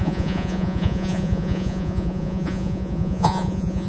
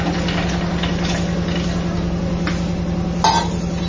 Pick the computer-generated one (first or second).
first